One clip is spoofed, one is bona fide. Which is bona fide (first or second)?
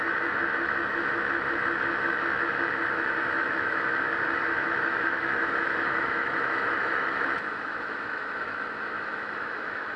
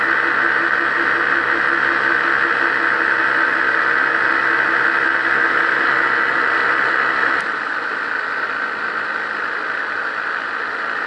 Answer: second